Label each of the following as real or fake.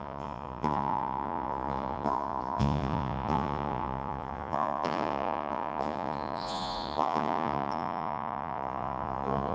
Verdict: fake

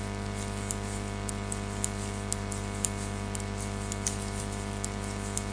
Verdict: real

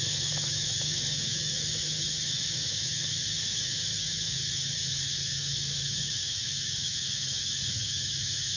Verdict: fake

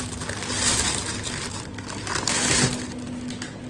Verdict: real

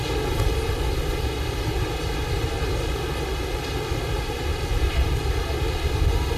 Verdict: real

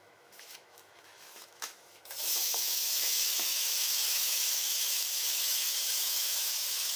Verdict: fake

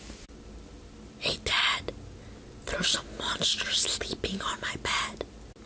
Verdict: real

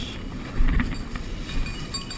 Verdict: real